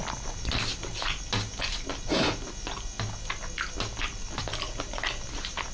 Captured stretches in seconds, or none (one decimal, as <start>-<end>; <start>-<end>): 0.0-5.7